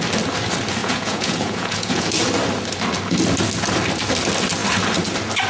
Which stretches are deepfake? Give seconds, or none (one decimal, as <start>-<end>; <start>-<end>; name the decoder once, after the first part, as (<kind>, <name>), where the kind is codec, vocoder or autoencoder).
0.8-2.1 (vocoder, Vocos)